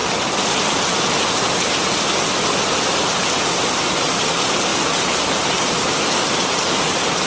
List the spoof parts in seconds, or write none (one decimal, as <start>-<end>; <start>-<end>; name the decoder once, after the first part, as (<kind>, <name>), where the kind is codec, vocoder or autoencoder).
0.0-4.7 (vocoder, BigVGAN v2); 6.3-7.3